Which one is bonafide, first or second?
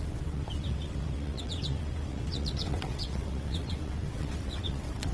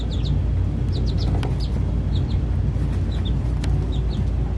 second